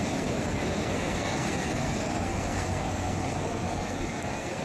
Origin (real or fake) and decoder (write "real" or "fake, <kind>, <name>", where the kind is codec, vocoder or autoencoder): fake, codec, SNAC